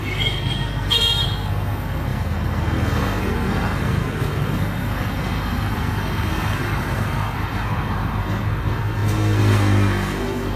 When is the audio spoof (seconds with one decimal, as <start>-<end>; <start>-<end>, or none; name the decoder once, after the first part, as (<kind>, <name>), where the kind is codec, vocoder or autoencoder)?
0.0-10.6 (codec, SNAC)